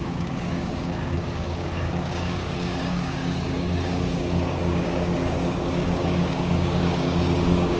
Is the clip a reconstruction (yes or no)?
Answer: yes